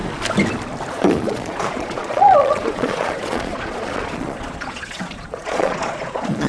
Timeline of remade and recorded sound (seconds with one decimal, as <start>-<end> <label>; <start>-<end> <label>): 0.0-0.9 recorded; 0.9-6.5 remade

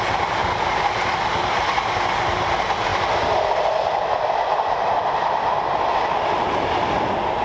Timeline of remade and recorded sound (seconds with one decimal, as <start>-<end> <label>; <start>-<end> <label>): 0.0-7.4 recorded

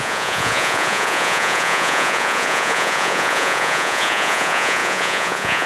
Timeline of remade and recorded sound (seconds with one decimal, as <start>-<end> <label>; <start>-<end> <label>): 0.0-5.7 remade

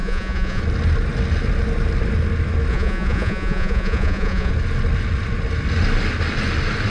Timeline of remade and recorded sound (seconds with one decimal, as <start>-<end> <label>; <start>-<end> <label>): 0.0-0.6 remade; 0.6-2.7 recorded; 2.7-4.5 remade; 4.5-6.9 recorded

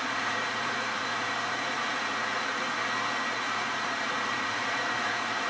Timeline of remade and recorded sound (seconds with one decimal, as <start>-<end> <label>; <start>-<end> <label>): 0.0-2.8 remade; 2.8-3.4 recorded; 3.4-5.5 remade

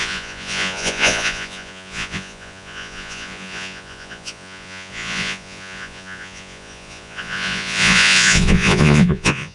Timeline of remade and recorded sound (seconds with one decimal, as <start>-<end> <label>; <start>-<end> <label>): 0.0-9.5 remade

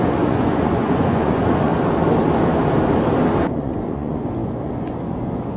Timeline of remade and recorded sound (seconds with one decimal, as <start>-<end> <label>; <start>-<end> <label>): 0.0-1.7 remade; 1.7-3.5 recorded; 3.5-5.6 remade